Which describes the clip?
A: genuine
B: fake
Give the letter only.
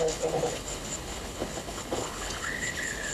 B